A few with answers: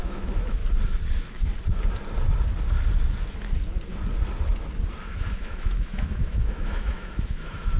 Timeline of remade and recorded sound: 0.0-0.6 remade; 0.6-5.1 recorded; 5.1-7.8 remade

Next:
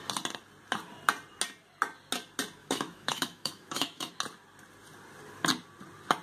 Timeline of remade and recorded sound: 0.0-2.6 recorded; 2.6-4.1 remade; 4.1-6.2 recorded

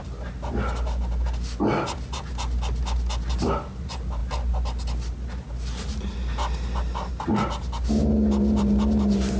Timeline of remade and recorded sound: 0.0-9.4 recorded

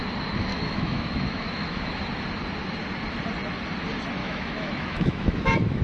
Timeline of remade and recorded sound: 0.0-0.5 recorded; 0.5-2.0 remade; 2.0-4.2 recorded; 4.2-5.8 remade

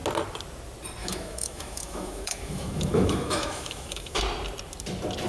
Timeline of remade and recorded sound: 0.0-1.0 recorded; 1.0-4.2 remade; 4.2-5.3 recorded

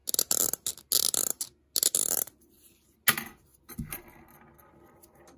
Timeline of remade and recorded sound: 0.0-5.4 recorded

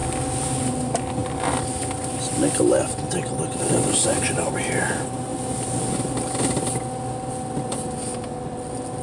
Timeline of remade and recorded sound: 0.0-9.0 recorded